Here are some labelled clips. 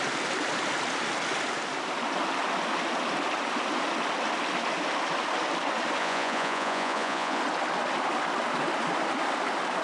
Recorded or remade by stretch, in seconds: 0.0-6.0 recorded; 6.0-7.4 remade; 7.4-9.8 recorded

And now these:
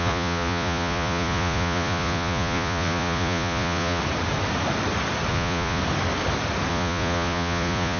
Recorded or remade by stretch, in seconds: 0.0-4.0 remade; 4.0-5.3 recorded; 5.3-5.8 remade; 5.8-6.7 recorded; 6.7-8.0 remade

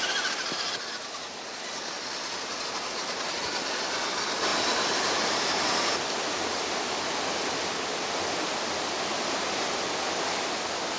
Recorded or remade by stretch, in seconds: 0.0-11.0 recorded

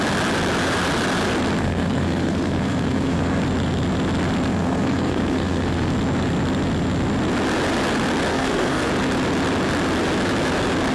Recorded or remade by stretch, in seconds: 0.0-1.6 recorded; 1.6-3.4 remade; 3.4-4.5 recorded; 4.5-5.9 remade; 5.9-8.3 recorded; 8.3-8.9 remade; 8.9-10.9 recorded